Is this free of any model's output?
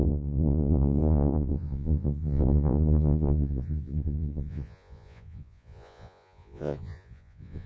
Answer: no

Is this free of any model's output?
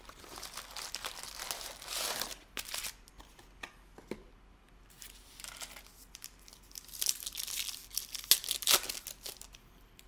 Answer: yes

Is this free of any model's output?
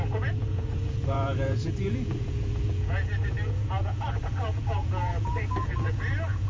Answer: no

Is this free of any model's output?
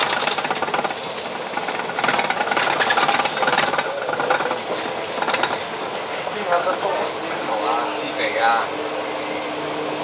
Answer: yes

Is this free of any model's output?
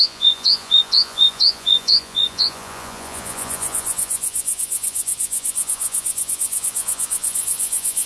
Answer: no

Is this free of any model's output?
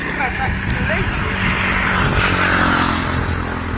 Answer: yes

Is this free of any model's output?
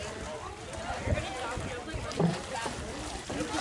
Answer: yes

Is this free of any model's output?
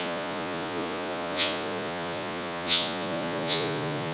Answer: no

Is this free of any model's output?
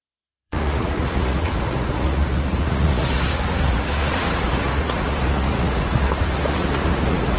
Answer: no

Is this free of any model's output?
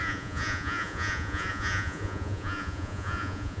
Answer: no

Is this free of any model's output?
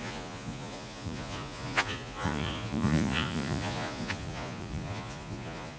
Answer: no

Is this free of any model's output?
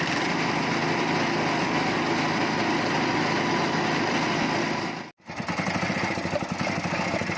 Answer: yes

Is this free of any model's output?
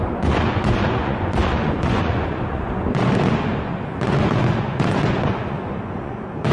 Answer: no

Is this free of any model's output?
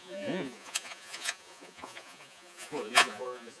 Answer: no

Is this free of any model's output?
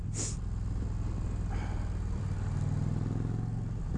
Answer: yes